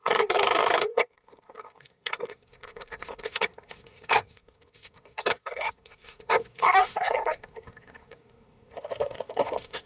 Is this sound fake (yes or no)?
yes